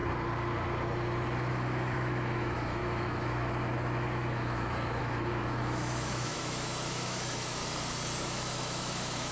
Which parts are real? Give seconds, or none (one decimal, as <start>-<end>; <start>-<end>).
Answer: 0.0-1.5; 7.6-8.2